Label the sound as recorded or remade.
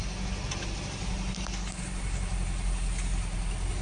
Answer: recorded